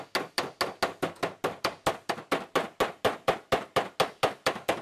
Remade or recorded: recorded